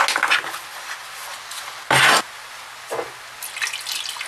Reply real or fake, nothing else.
real